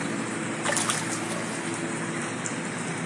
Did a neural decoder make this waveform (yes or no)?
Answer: no